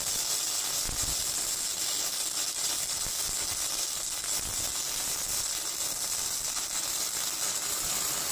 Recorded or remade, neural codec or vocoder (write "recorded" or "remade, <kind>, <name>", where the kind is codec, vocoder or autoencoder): recorded